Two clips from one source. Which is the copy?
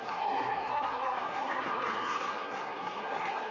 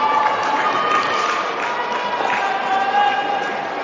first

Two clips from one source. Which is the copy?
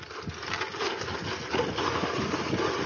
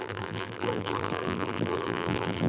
second